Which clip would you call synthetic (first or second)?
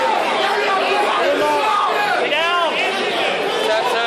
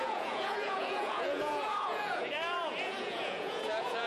second